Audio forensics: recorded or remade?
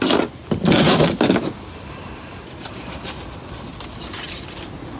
recorded